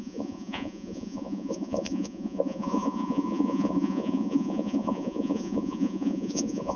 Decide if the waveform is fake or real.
fake